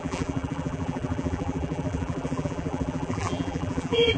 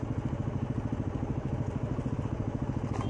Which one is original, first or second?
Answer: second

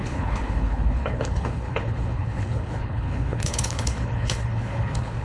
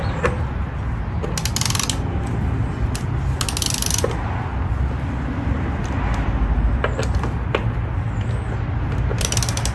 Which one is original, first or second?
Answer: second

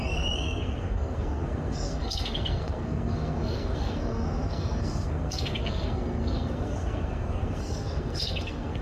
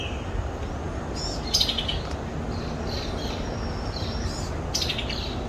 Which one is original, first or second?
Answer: second